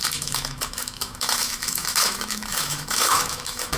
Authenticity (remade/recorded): remade